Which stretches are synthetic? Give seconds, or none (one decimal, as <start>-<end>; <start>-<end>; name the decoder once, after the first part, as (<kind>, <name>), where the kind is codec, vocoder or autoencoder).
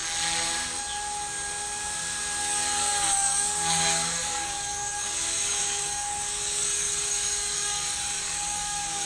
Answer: 2.4-9.1 (codec, DAC)